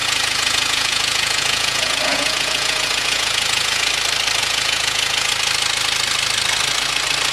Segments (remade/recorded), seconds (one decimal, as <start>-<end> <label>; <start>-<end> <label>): 0.0-3.9 remade; 3.9-4.4 recorded; 4.4-5.3 remade; 5.3-7.3 recorded